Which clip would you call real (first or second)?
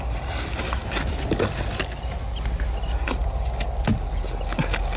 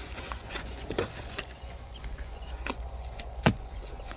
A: first